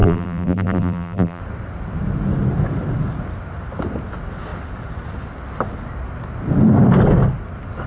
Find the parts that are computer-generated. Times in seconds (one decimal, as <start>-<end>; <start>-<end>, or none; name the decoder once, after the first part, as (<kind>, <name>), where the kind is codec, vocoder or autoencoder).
0.0-1.4 (vocoder, BigVGAN v2)